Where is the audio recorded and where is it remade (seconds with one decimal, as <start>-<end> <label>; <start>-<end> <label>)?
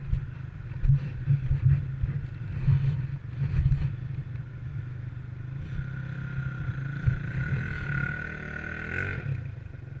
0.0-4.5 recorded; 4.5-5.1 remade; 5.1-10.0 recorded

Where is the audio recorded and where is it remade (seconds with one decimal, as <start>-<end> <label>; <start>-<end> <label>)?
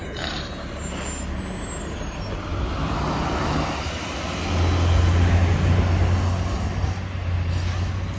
0.0-0.5 remade; 0.5-8.2 recorded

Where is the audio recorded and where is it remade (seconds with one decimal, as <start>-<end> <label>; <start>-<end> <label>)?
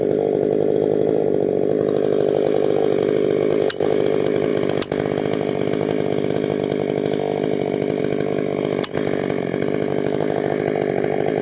0.0-9.9 recorded; 9.9-10.6 remade; 10.6-11.4 recorded